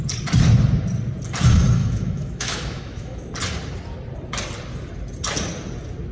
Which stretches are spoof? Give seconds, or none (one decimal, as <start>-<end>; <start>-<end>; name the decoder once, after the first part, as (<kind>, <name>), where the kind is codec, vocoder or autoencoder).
1.8-3.3 (autoencoder, DAC-VAE)